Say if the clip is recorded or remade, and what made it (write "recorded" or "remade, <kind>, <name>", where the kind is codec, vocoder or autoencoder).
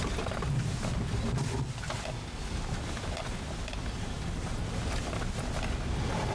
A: recorded